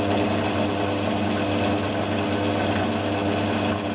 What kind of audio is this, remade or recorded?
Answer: recorded